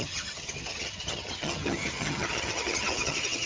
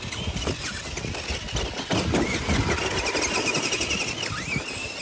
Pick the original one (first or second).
second